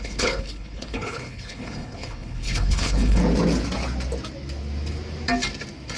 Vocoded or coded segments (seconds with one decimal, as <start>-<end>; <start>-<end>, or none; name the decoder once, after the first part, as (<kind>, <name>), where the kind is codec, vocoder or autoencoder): 0.0-3.2 (codec, HILCodec)